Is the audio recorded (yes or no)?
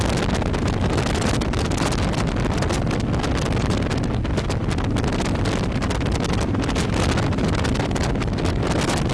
yes